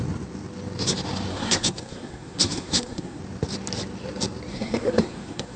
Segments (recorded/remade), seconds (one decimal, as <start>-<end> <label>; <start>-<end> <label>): 0.0-1.3 recorded; 1.3-3.2 remade; 3.2-4.5 recorded; 4.5-5.6 remade